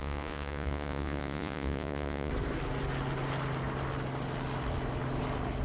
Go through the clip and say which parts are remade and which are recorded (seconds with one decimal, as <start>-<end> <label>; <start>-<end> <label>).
0.0-2.3 remade; 2.3-5.6 recorded